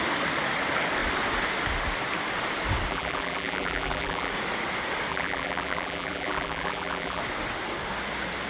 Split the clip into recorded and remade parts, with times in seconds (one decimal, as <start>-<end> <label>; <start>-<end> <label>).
0.0-2.9 recorded; 2.9-4.3 remade; 4.3-5.1 recorded; 5.1-7.2 remade; 7.2-8.5 recorded